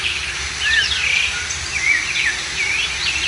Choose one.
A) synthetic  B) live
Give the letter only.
B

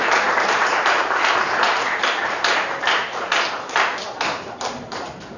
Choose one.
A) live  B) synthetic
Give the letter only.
B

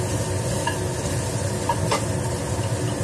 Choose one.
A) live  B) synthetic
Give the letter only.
A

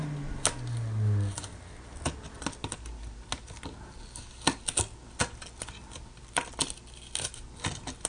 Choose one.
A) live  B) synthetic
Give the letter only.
A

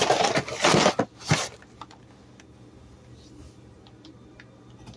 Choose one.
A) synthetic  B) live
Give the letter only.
B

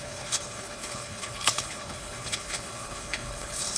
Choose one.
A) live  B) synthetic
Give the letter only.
B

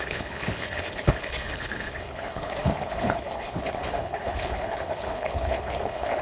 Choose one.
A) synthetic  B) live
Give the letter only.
A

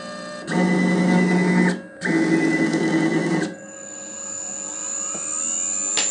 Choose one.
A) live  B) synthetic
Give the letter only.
A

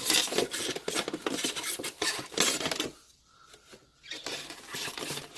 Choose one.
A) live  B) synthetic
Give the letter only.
A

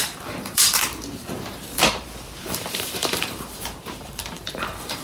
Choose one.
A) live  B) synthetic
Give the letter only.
B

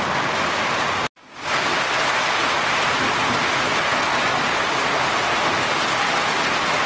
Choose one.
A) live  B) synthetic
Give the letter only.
A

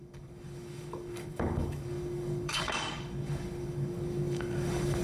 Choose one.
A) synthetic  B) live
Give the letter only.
A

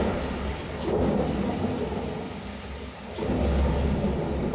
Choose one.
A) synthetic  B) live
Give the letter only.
B